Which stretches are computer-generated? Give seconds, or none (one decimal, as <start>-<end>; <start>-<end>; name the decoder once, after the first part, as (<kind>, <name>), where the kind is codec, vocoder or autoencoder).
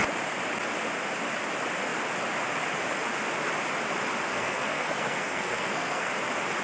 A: 4.3-6.1 (codec, SNAC)